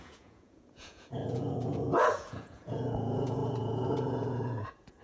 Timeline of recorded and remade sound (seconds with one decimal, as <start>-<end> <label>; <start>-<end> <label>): 0.0-5.0 remade